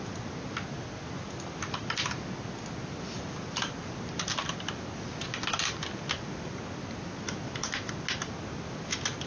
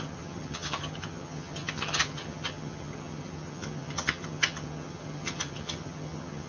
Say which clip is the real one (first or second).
first